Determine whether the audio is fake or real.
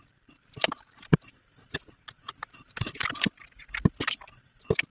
real